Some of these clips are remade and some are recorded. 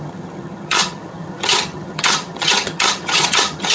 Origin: remade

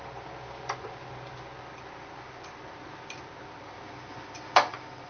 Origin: recorded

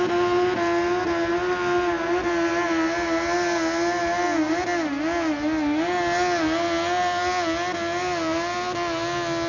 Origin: recorded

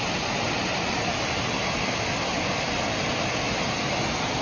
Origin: recorded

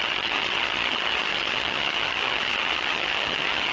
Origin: remade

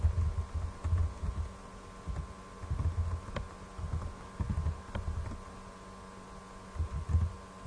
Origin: recorded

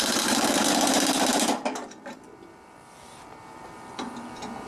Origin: remade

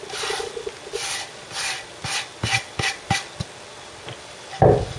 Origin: recorded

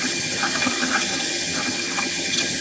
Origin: remade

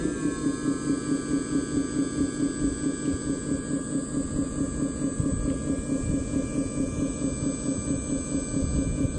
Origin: recorded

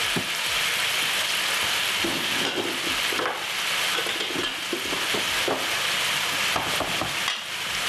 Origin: recorded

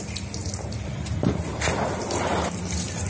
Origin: remade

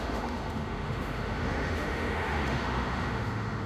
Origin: remade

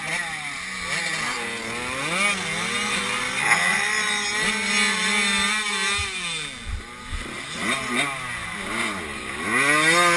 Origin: recorded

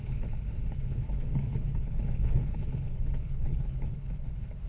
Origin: remade